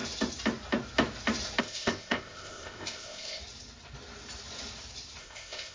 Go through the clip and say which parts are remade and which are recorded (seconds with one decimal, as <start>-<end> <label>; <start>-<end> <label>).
0.0-1.6 recorded; 1.6-3.4 remade; 3.4-5.2 recorded; 5.2-5.7 remade